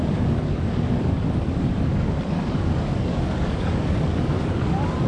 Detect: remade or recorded remade